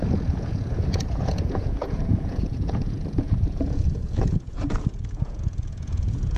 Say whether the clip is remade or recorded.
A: remade